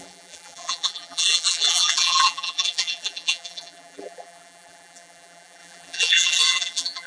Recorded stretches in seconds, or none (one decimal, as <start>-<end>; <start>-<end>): none